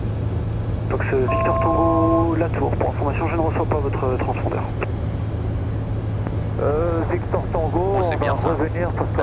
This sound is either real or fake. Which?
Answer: real